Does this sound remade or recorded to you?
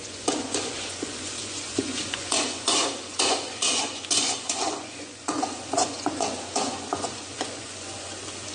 remade